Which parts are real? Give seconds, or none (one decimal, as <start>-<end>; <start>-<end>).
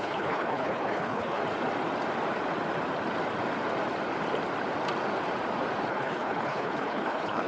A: 1.4-5.9